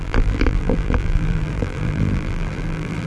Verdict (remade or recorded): remade